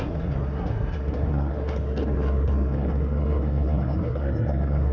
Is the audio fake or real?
fake